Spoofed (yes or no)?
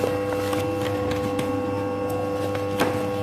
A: no